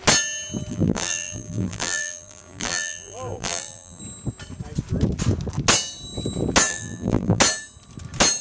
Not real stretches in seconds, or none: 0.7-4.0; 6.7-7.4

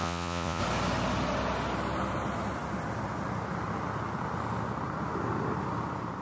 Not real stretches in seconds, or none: 0.0-0.6